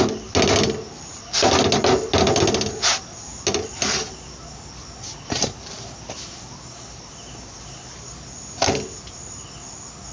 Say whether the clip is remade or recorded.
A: recorded